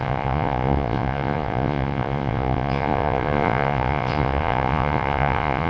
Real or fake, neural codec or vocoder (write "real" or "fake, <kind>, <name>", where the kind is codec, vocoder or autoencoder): fake, vocoder, Vocos